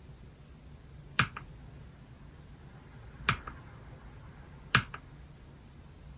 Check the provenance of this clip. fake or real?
real